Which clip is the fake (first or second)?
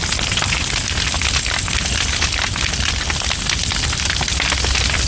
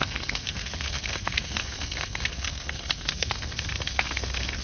second